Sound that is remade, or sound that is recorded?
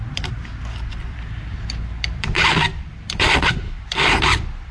remade